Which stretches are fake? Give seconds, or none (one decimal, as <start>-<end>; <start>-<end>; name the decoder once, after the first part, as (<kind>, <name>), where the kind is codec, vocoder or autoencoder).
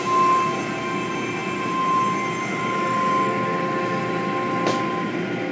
none